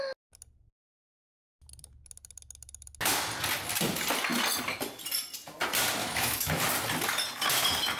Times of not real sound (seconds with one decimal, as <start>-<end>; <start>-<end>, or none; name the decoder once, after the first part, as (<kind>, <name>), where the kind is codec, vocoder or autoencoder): 6.0-6.6 (autoencoder, DAC-VAE)